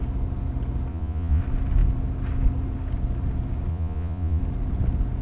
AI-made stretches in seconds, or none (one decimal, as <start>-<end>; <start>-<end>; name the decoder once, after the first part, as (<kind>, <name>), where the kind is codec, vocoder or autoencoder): 0.9-1.4 (vocoder, Vocos); 3.7-4.4